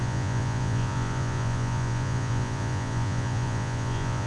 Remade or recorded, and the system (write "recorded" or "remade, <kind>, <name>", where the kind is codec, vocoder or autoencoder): remade, vocoder, Vocos